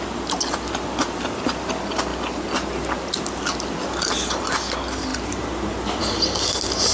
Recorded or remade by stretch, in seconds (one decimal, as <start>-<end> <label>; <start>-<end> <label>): 0.0-6.9 recorded